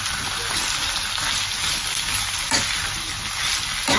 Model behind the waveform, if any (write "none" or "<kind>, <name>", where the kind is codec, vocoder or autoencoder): none